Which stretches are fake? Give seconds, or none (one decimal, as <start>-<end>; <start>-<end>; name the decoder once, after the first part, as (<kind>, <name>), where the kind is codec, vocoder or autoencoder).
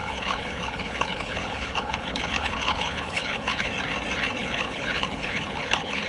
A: 0.0-3.7 (codec, HILCodec); 4.4-6.1